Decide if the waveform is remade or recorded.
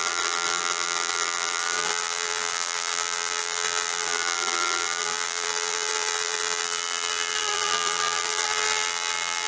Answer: remade